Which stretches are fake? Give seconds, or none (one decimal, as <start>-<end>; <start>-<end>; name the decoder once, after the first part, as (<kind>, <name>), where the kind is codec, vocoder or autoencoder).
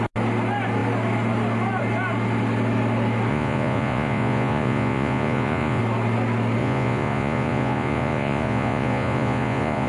3.3-5.8 (vocoder, Vocos); 6.6-9.9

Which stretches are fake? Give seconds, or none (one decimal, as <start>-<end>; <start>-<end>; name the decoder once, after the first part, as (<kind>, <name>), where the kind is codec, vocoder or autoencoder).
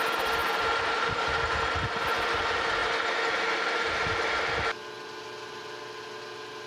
0.4-1.3 (vocoder, BigVGAN v2)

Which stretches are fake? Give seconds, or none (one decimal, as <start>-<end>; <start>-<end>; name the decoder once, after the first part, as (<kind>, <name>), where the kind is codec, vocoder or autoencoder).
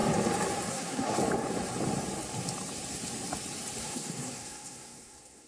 0.7-1.2 (codec, SNAC); 3.8-5.5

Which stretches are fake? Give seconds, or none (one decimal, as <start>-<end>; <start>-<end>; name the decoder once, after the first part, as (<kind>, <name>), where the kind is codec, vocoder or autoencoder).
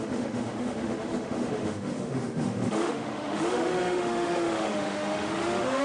0.0-5.8 (autoencoder, DAC-VAE)